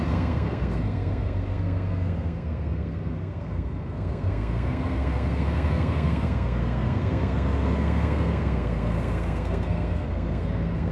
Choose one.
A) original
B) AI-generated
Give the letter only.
B